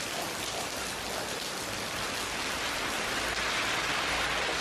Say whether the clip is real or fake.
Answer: real